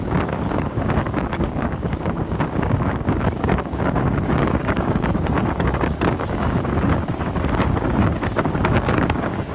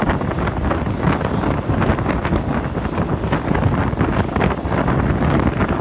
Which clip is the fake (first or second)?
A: first